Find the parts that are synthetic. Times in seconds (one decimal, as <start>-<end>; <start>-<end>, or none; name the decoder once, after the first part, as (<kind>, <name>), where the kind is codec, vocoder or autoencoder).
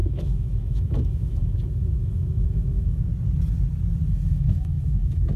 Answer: 0.0-3.1 (autoencoder, DAC-VAE); 4.1-5.4